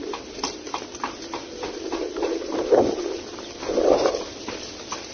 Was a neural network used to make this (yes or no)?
no